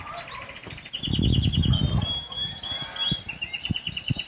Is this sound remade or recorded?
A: recorded